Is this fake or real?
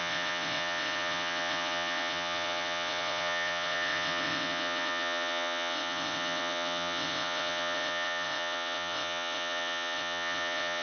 fake